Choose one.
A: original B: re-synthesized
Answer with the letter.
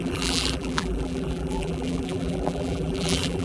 B